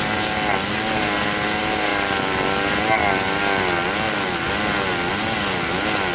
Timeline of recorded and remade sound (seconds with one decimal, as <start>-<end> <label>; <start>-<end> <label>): 0.0-6.1 recorded